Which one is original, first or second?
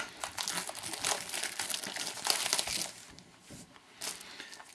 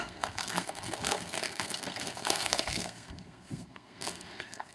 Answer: first